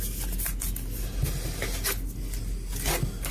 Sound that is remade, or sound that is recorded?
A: recorded